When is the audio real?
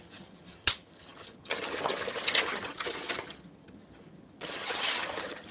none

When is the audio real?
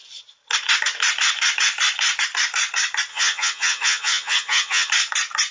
0.0-3.1; 4.9-5.5